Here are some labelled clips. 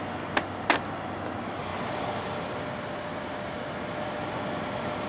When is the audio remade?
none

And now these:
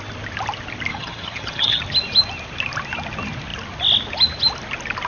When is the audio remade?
0.9-1.8 (vocoder, HiFi-GAN)

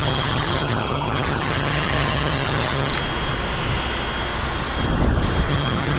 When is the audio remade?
0.0-2.9 (vocoder, HiFi-GAN); 5.5-6.0